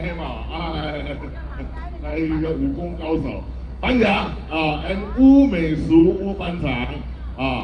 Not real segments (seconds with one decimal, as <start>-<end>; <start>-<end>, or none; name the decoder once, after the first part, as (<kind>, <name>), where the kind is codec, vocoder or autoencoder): 0.7-1.3 (codec, HILCodec); 2.1-4.9; 6.0-6.6